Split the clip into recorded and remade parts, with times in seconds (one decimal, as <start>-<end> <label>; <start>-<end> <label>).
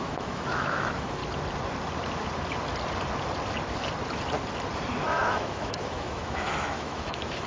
0.0-1.2 remade; 1.2-5.0 recorded; 5.0-7.5 remade